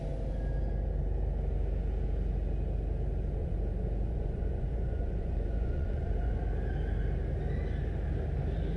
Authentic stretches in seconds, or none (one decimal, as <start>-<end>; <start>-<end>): 0.0-3.4; 6.4-8.8

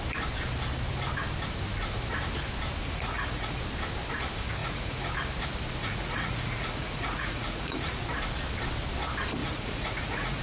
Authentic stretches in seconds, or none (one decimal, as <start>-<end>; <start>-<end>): 0.0-2.8; 3.6-4.6; 5.1-5.8; 8.0-9.4

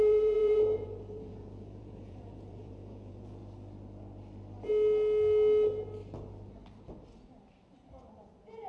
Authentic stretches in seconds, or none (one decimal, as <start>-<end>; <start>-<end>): 3.4-8.1